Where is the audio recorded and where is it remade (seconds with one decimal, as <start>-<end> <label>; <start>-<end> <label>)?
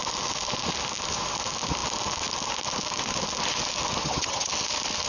0.0-4.0 recorded; 4.0-4.5 remade; 4.5-5.1 recorded